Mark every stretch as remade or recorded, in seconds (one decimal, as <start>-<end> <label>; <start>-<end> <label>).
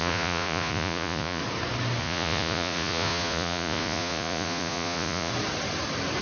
0.0-1.4 remade; 1.4-2.0 recorded; 2.0-5.3 remade; 5.3-6.2 recorded